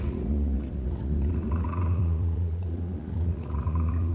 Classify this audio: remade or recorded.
remade